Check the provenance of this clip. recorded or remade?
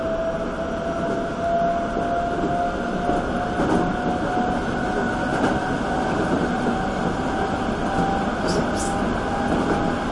recorded